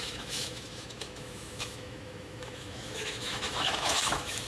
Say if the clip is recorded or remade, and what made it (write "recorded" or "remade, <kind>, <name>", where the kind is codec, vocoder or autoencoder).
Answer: remade, autoencoder, DAC-VAE